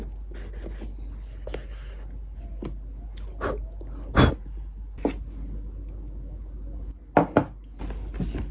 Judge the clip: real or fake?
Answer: real